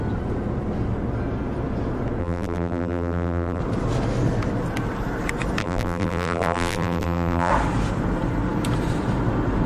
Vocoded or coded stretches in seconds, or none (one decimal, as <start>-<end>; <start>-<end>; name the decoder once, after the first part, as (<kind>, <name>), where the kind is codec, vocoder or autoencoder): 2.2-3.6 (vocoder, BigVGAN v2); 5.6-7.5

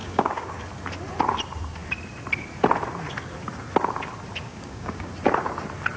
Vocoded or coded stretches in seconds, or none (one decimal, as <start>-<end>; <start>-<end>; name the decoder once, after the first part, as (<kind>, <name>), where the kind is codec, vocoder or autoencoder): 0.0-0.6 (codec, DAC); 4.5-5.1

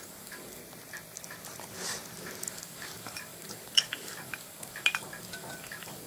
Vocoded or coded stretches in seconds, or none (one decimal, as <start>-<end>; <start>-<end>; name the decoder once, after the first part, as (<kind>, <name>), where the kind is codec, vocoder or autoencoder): 0.0-0.6 (codec, DAC); 2.5-6.1

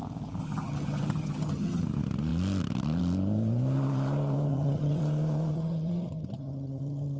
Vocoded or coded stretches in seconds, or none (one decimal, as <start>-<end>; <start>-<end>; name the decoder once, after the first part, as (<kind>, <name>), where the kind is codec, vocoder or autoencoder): 0.4-1.8 (vocoder, HiFi-GAN); 4.5-5.0; 5.5-7.2

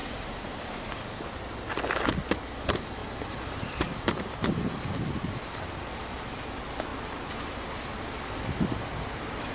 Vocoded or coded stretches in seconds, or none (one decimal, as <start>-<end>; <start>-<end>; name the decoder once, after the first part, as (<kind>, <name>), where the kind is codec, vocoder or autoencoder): 0.0-0.9 (vocoder, BigVGAN v2); 3.0-4.8; 6.9-7.7